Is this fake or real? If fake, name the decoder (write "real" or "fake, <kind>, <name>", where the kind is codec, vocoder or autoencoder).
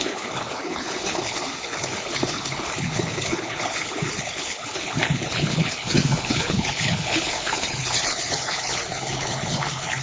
fake, codec, HILCodec